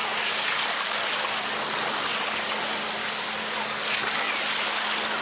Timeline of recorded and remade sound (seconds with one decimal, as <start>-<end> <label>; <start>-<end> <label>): 0.0-0.6 remade; 0.6-2.1 recorded; 2.1-2.6 remade; 2.6-3.0 recorded; 3.0-4.3 remade; 4.3-5.2 recorded

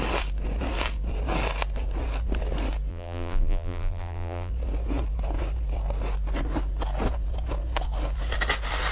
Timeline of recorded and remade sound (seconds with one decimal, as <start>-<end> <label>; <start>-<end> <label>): 0.0-2.9 recorded; 2.9-4.5 remade; 4.5-8.9 recorded

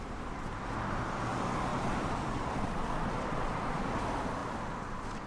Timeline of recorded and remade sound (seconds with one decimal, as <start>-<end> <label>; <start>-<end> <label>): 0.0-1.7 recorded; 1.7-4.0 remade; 4.0-5.3 recorded

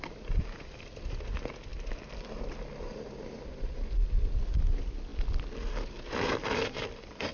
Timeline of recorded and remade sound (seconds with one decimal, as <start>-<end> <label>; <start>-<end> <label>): 0.0-1.7 recorded; 1.7-2.4 remade; 2.4-7.3 recorded